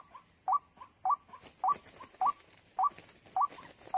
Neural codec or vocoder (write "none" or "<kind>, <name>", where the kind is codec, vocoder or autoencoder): none